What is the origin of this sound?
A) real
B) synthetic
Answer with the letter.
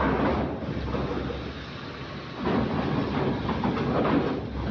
A